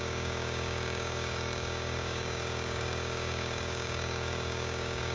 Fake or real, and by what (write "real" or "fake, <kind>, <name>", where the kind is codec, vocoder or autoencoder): fake, codec, DAC